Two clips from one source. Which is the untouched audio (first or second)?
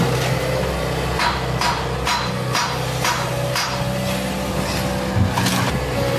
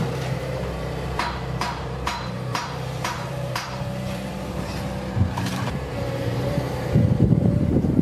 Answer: first